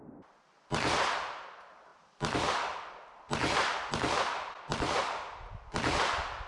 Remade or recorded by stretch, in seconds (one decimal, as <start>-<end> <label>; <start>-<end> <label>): 0.0-6.5 recorded